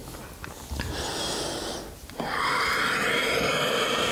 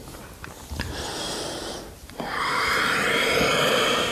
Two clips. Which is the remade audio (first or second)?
second